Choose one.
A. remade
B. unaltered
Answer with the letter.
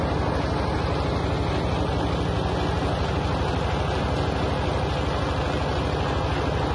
B